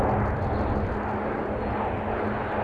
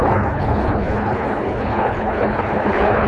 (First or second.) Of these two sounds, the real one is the first